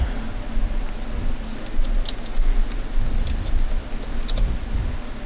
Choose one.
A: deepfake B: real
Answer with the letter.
B